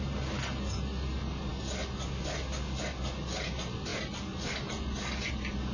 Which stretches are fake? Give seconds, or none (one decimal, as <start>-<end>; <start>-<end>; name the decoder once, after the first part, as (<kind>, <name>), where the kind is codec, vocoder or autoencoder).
none